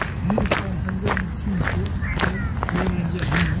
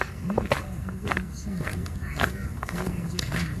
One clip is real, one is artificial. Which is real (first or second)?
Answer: first